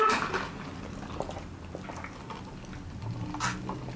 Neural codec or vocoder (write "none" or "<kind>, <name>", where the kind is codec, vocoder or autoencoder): none